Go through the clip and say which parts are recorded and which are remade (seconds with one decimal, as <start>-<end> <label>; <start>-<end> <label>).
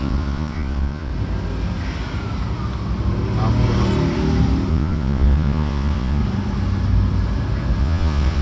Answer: 0.0-1.1 remade; 1.1-4.7 recorded; 4.7-6.2 remade; 6.2-7.8 recorded; 7.8-8.4 remade